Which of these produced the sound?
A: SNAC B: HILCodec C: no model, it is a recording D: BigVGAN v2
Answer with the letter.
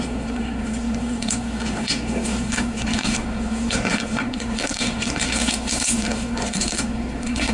A